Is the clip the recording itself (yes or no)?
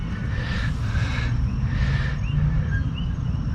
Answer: yes